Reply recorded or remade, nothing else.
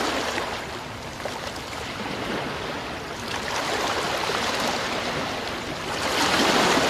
recorded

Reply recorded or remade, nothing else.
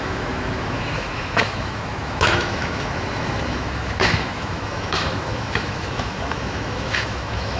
remade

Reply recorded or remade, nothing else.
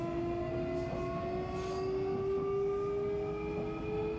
recorded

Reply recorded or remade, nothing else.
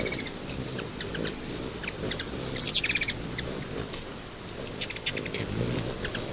recorded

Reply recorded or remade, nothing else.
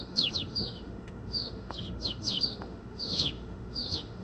remade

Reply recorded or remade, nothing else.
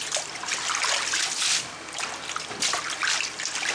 recorded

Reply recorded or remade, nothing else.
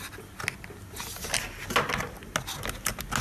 recorded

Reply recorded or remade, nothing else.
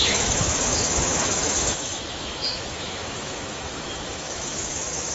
remade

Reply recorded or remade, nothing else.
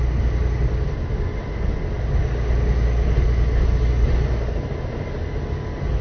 recorded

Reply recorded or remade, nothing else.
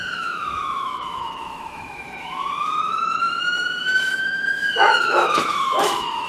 remade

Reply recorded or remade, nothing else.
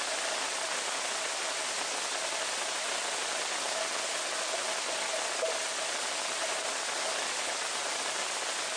recorded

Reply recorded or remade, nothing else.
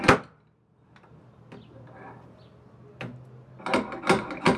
recorded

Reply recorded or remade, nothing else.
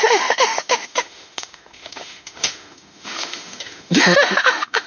remade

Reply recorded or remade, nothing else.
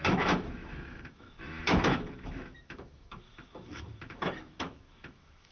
remade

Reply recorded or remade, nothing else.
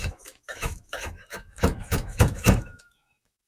remade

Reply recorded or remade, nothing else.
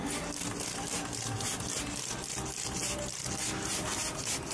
recorded